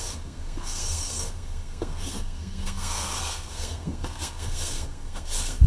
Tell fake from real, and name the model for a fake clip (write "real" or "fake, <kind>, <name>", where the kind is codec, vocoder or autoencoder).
fake, codec, SNAC